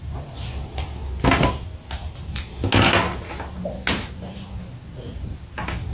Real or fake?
real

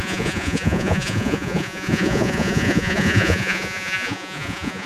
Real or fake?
fake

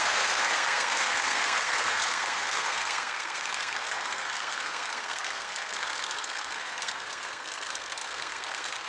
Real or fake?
fake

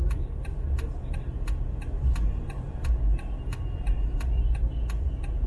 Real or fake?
real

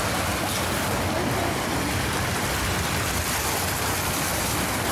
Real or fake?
real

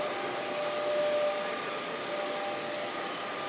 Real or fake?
real